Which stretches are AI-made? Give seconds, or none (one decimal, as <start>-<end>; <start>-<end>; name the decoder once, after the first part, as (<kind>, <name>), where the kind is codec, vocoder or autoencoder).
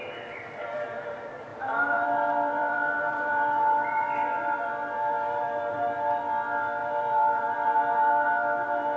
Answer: 1.5-5.7 (vocoder, BigVGAN v2); 6.8-8.1